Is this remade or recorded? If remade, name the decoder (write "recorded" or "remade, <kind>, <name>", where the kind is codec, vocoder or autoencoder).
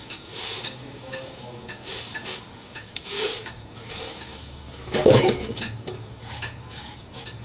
remade, codec, DAC